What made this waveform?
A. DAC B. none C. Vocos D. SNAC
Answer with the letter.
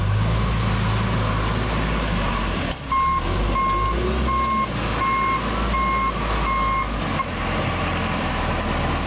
B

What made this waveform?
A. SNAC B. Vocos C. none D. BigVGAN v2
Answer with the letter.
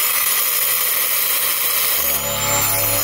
C